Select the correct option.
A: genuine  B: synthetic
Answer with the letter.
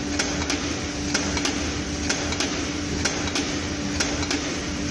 A